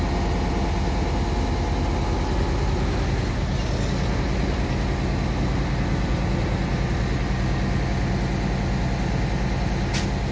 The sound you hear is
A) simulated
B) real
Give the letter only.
B